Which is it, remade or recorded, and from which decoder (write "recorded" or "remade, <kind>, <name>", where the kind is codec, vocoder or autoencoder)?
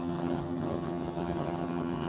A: remade, vocoder, HiFi-GAN